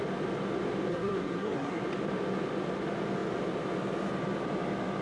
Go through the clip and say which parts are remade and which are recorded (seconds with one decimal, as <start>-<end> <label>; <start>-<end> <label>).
0.0-0.9 recorded; 0.9-1.8 remade; 1.8-5.0 recorded